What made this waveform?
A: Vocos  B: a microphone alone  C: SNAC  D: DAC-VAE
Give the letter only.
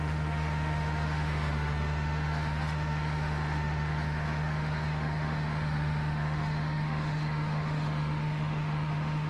D